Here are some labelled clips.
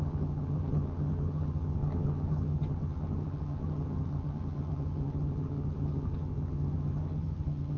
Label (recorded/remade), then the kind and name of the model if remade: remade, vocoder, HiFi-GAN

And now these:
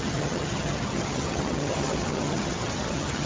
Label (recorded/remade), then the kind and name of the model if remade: remade, vocoder, HiFi-GAN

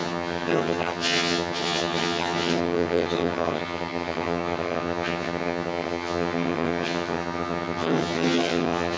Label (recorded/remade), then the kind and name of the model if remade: remade, vocoder, HiFi-GAN